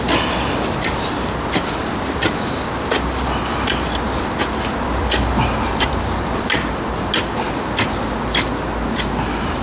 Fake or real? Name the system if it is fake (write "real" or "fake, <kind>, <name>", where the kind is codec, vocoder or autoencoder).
real